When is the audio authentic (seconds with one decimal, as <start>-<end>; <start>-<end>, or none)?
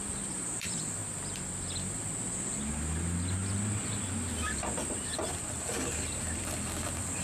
1.0-5.3